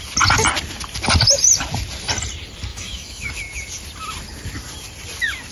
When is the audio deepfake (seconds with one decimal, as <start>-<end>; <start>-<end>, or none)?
2.7-3.3